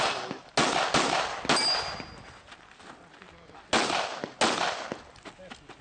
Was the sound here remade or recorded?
recorded